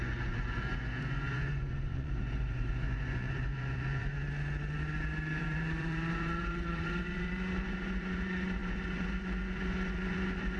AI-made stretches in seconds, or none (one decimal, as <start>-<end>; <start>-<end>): 0.0-4.1; 5.4-10.6